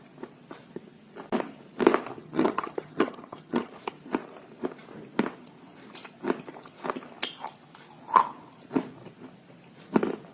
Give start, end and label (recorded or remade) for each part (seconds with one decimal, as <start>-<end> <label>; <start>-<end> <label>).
0.0-2.2 recorded; 2.2-3.7 remade; 3.7-10.3 recorded